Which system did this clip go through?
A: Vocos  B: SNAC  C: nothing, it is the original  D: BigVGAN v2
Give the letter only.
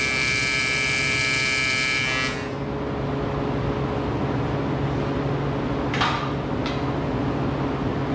C